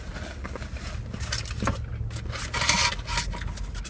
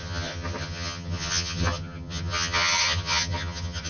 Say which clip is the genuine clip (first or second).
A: first